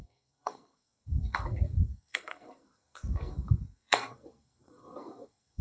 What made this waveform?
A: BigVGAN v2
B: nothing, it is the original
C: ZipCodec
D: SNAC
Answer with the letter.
D